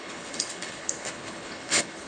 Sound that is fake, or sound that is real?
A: fake